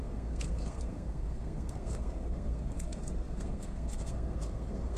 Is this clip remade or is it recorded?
remade